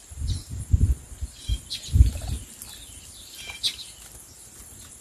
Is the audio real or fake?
real